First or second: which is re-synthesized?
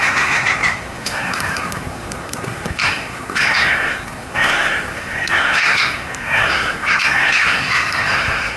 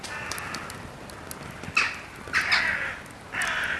first